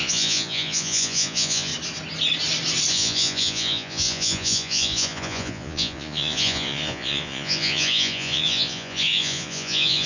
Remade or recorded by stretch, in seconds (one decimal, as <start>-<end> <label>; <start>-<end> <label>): 0.0-1.7 remade; 1.7-2.9 recorded; 2.9-10.1 remade